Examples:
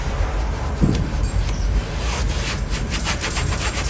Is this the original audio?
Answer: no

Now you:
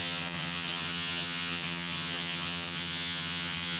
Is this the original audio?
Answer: no